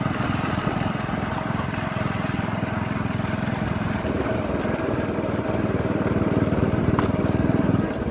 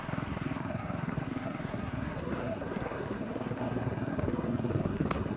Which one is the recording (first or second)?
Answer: first